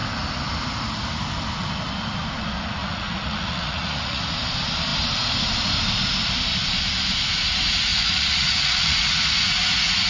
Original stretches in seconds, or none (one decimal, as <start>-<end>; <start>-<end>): 0.0-2.8; 4.2-7.9